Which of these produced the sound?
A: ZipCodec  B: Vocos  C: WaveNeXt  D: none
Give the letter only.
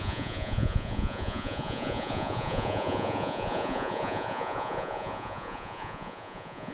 B